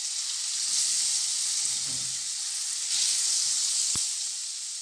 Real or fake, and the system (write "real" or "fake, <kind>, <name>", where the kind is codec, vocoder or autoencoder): real